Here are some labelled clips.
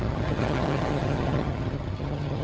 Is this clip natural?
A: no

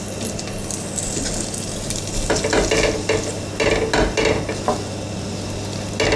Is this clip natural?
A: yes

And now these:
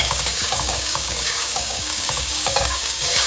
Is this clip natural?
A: no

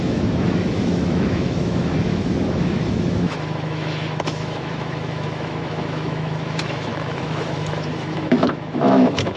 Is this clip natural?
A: no